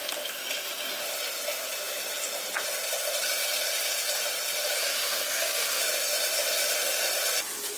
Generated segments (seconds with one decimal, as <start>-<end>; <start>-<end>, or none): 4.8-5.8